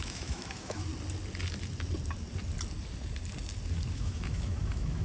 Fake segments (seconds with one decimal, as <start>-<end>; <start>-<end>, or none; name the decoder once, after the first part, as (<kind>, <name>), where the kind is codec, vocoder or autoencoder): 0.0-0.9 (autoencoder, DAC-VAE); 3.9-5.0